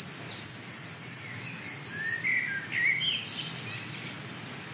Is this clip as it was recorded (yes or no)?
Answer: yes